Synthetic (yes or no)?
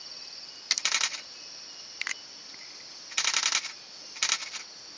no